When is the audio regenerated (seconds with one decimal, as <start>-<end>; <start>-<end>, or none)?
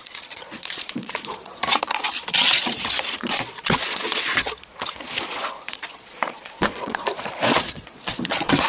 0.0-8.7